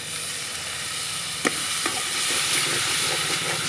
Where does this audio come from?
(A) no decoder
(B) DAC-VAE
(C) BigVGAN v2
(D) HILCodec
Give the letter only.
A